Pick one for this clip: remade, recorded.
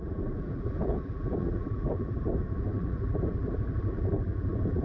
remade